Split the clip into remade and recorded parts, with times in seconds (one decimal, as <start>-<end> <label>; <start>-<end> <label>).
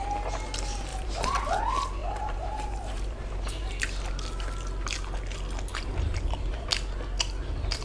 0.0-0.9 recorded; 0.9-1.6 remade; 1.6-2.0 recorded; 2.0-3.7 remade; 3.7-5.7 recorded; 5.7-6.7 remade; 6.7-7.8 recorded